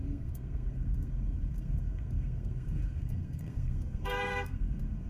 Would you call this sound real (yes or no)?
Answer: no